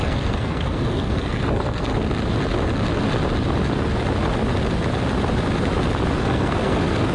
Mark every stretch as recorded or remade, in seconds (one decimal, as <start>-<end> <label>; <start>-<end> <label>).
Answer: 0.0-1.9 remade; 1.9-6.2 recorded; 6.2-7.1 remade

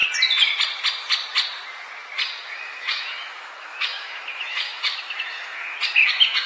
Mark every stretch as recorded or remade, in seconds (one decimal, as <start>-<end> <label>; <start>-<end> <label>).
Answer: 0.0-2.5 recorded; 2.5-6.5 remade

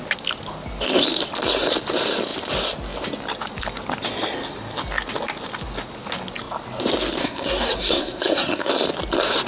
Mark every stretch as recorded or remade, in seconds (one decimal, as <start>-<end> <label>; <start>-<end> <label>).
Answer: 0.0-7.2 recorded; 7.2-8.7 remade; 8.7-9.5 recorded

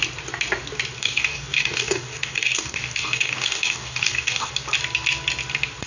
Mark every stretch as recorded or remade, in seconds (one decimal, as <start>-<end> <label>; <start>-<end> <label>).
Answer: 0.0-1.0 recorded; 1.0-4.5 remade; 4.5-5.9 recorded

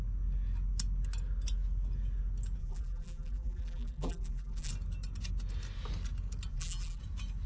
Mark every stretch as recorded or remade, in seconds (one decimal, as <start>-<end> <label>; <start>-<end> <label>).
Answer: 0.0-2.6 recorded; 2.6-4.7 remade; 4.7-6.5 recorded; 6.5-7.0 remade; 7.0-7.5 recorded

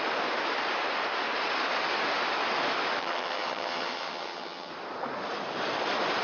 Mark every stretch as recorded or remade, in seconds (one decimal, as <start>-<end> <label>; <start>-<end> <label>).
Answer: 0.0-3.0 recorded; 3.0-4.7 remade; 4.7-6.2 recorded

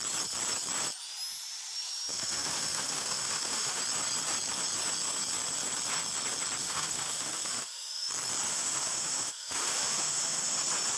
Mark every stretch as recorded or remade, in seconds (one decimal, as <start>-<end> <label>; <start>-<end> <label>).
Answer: 0.0-2.1 recorded; 2.1-3.8 remade; 3.8-6.6 recorded; 6.6-8.1 remade; 8.1-8.5 recorded; 8.5-10.6 remade; 10.6-11.0 recorded

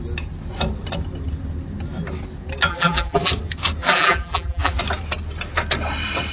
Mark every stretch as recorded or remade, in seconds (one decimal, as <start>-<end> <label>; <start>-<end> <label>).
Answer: 0.0-2.7 recorded; 2.7-3.3 remade; 3.3-3.8 recorded; 3.8-4.8 remade; 4.8-6.3 recorded